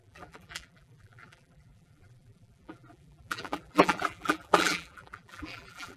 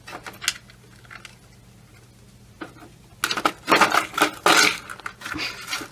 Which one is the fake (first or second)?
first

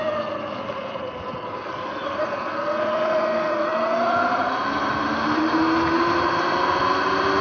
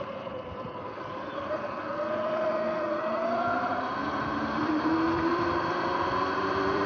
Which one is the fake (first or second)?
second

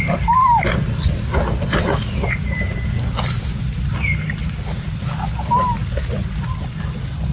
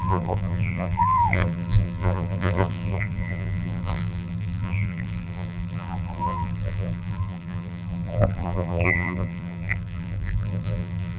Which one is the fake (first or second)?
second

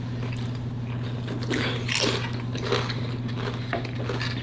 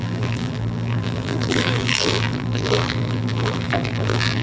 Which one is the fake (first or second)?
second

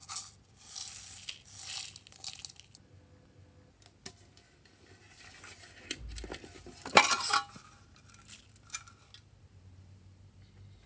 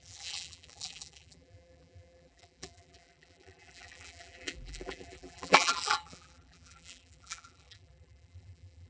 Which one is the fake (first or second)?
second